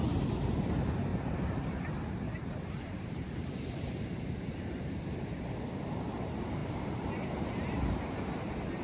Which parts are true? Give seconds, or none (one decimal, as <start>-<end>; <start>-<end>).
0.0-1.1; 5.6-6.6; 8.2-8.8